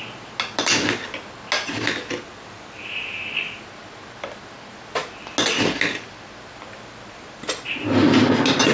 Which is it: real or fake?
real